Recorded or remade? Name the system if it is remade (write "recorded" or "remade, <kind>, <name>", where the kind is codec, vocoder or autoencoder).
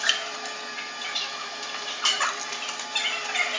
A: recorded